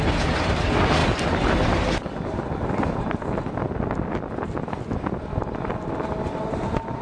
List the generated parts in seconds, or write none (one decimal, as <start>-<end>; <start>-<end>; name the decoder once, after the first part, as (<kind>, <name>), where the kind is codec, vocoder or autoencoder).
none